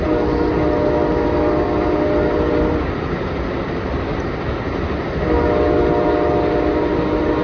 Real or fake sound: real